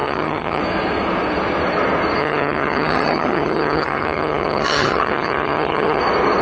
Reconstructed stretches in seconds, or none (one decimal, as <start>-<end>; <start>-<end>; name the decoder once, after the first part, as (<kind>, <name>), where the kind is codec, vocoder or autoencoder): 0.0-0.6 (vocoder, HiFi-GAN); 2.2-6.0